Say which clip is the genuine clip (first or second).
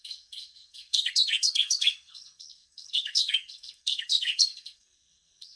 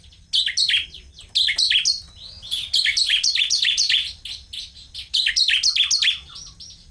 second